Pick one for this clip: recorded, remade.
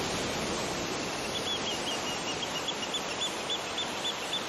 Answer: recorded